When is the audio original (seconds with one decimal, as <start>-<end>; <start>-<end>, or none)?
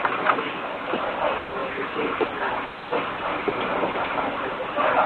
0.0-5.1